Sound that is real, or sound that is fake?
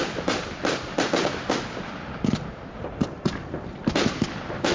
real